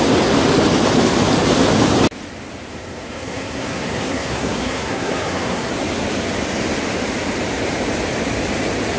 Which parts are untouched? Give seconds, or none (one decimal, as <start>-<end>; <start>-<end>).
0.0-2.7; 5.7-9.0